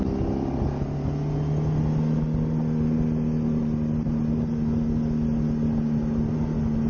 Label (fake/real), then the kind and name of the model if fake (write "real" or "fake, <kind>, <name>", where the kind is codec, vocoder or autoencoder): real